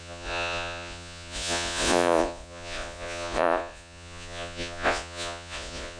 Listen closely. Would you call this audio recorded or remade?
remade